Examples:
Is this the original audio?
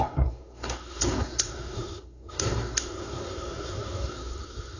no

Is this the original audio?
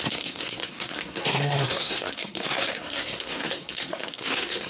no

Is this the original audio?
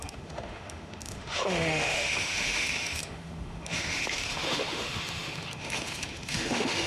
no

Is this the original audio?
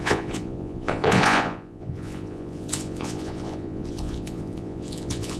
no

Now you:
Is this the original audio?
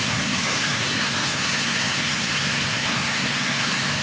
no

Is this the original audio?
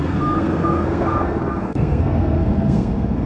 no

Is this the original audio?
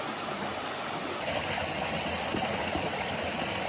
yes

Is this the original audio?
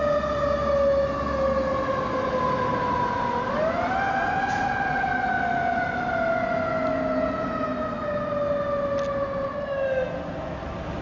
yes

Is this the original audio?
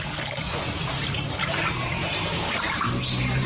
yes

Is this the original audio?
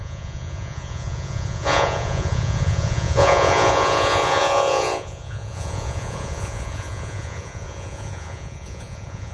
no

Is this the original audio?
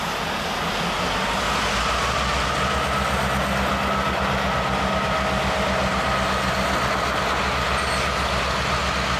yes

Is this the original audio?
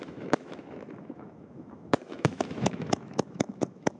no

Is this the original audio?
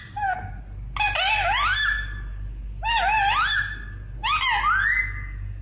yes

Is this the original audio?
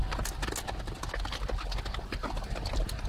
yes